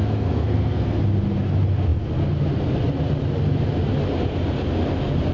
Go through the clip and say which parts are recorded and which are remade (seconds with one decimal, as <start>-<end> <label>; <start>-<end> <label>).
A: 0.0-1.0 remade; 1.0-5.3 recorded